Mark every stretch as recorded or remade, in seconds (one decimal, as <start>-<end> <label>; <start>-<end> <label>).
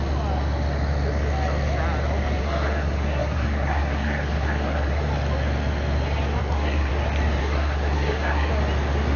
0.0-2.4 recorded; 2.4-5.0 remade; 5.0-6.4 recorded; 6.4-6.9 remade; 6.9-7.4 recorded; 7.4-8.5 remade; 8.5-9.2 recorded